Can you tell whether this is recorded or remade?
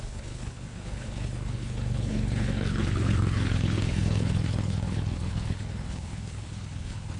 remade